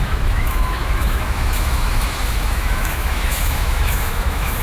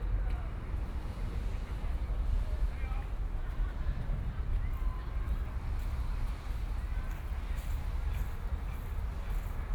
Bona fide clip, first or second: second